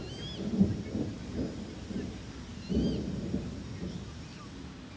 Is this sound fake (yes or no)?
no